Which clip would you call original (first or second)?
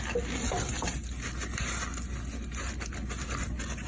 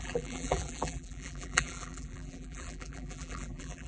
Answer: first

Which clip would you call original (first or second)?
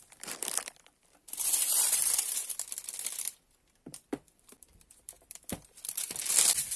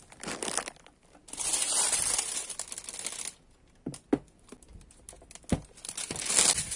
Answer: second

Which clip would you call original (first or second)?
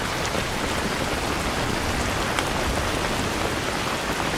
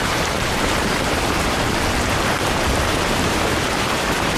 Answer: first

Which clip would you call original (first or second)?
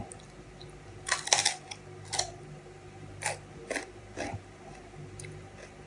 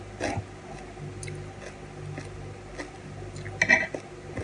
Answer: second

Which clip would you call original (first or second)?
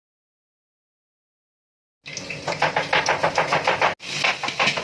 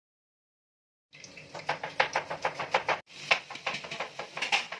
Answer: first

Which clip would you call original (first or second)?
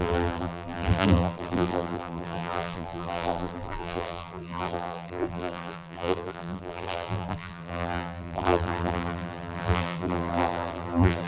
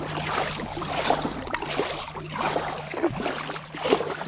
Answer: second